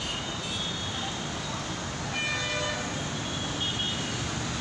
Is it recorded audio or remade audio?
recorded